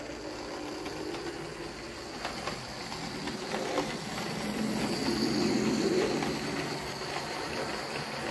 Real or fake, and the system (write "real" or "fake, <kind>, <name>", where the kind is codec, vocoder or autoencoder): real